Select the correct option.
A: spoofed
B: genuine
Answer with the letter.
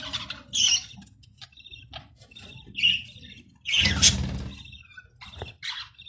B